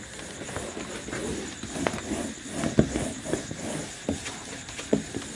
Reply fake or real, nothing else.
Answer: real